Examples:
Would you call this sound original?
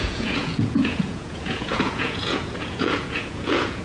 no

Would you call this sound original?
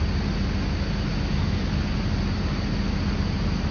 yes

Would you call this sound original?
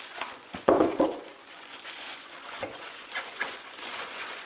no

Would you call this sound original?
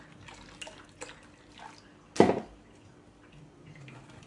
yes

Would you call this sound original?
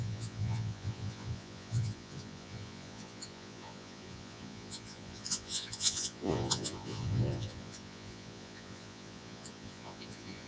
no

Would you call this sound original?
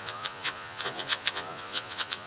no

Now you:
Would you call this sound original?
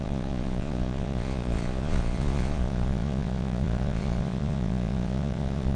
no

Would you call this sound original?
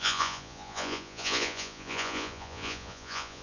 no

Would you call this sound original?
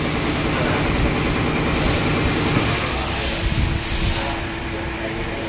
yes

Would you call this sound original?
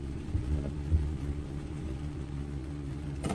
no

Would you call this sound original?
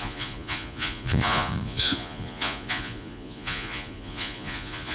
no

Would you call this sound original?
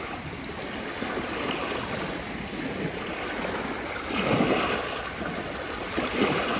yes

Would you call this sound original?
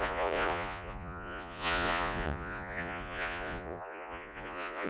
no